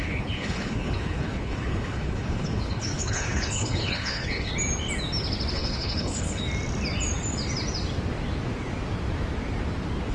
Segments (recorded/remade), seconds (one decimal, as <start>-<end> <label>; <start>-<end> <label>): 0.0-4.5 remade; 4.5-5.5 recorded; 5.5-6.4 remade; 6.4-10.1 recorded